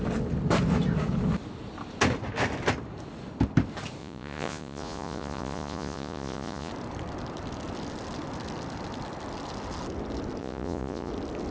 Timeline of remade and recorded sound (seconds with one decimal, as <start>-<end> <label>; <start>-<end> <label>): 0.0-4.0 recorded; 4.0-6.7 remade; 6.7-10.4 recorded; 10.4-11.1 remade; 11.1-11.5 recorded